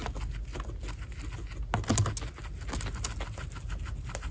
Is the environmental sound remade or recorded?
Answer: recorded